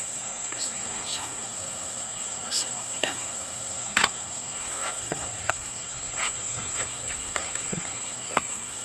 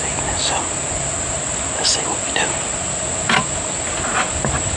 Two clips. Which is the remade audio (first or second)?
first